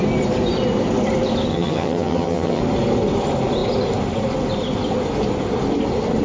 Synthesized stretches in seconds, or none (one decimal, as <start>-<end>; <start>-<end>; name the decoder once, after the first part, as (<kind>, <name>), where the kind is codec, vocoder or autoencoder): 1.5-2.6 (vocoder, HiFi-GAN)